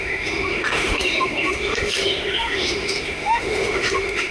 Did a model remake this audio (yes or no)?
yes